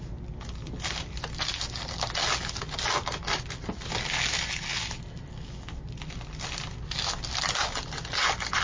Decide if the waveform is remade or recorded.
recorded